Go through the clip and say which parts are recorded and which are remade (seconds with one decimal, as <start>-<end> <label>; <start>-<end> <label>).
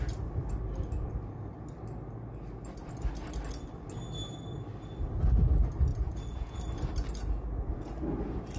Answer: 0.0-5.9 recorded; 5.9-6.6 remade; 6.6-8.6 recorded